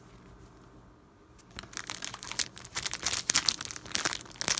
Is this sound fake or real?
real